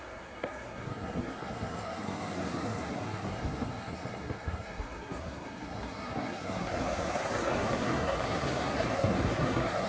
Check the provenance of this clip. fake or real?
fake